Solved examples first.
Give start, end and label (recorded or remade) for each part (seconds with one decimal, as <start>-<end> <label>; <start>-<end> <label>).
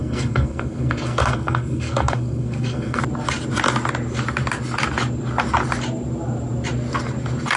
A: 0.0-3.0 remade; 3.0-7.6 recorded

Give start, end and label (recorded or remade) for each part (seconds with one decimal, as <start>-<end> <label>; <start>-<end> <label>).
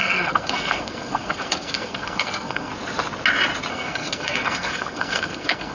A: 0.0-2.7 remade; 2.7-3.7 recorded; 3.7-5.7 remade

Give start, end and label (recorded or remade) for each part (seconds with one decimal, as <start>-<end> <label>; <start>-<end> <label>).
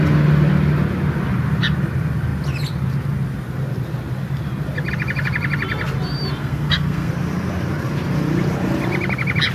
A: 0.0-6.4 recorded; 6.4-7.1 remade; 7.1-9.5 recorded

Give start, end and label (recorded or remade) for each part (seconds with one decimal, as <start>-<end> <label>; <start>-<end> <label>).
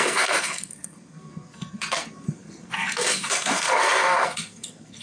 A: 0.0-5.0 remade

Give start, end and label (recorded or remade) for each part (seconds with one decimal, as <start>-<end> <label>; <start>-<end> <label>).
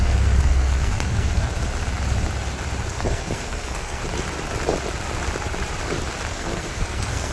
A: 0.0-1.5 remade; 1.5-2.9 recorded; 2.9-4.0 remade; 4.0-6.3 recorded; 6.3-7.3 remade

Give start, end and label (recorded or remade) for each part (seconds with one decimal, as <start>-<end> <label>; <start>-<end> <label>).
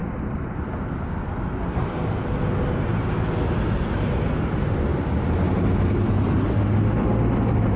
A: 0.0-7.8 recorded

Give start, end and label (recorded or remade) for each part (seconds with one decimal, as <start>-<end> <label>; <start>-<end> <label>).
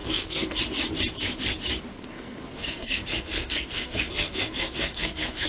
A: 0.0-0.6 remade; 0.6-1.9 recorded; 1.9-5.5 remade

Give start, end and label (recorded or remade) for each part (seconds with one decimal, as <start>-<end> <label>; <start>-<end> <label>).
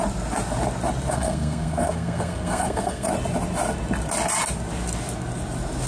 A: 0.0-1.1 recorded; 1.1-3.1 remade; 3.1-5.9 recorded